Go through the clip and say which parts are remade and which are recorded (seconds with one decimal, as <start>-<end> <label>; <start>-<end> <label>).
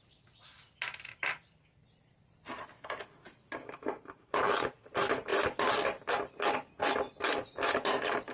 0.0-8.3 recorded